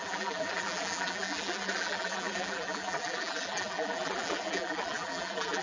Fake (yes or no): yes